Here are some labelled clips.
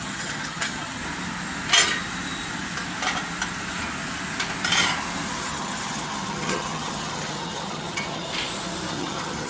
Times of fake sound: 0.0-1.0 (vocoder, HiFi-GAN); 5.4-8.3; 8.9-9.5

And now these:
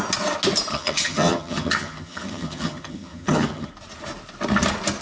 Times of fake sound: 0.7-3.7 (vocoder, HiFi-GAN)

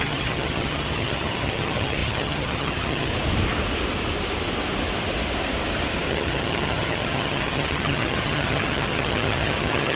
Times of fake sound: 0.0-3.1 (vocoder, HiFi-GAN); 6.1-10.0

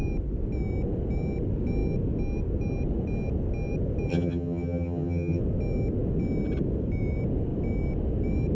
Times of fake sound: 4.1-5.4 (vocoder, HiFi-GAN)

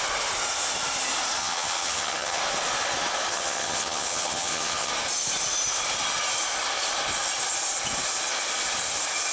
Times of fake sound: 1.4-2.4 (vocoder, HiFi-GAN); 3.3-4.9

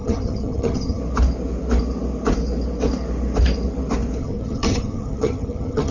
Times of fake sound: 0.0-1.0 (vocoder, HiFi-GAN); 4.2-5.9

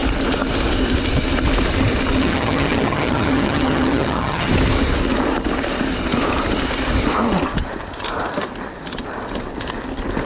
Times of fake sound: 2.2-4.5 (vocoder, HiFi-GAN)

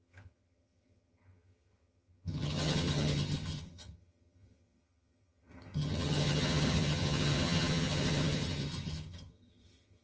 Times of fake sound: 0.0-10.0 (vocoder, HiFi-GAN)